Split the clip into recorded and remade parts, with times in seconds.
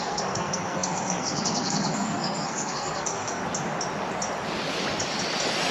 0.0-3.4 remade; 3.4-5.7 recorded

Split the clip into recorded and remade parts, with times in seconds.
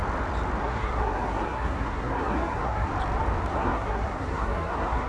0.0-0.6 recorded; 0.6-2.9 remade; 2.9-3.5 recorded; 3.5-5.1 remade